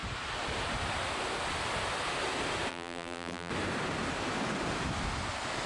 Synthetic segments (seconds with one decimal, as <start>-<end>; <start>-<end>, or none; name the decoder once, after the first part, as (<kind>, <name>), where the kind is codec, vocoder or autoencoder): 2.7-3.5 (vocoder, BigVGAN v2)